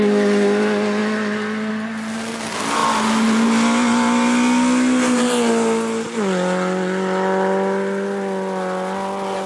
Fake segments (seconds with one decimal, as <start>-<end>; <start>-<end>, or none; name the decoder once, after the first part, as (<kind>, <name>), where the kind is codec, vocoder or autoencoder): none